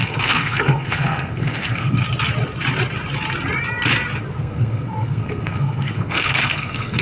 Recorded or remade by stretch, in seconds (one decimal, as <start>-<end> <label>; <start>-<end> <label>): 0.0-2.0 remade; 2.0-4.4 recorded; 4.4-7.0 remade